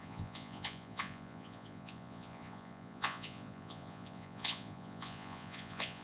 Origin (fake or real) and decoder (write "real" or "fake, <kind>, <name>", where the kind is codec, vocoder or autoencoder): fake, vocoder, Vocos